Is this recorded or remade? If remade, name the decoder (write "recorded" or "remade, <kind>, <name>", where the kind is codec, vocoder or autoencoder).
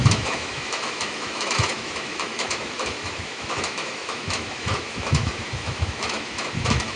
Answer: remade, autoencoder, DAC-VAE